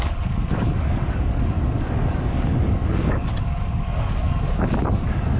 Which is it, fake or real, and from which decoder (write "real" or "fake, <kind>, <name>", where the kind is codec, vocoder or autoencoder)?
fake, codec, DAC